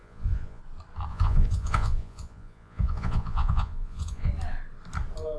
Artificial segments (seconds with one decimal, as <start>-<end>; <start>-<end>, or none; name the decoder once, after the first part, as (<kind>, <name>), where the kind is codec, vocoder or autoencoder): 0.0-0.6 (vocoder, Vocos); 1.1-4.3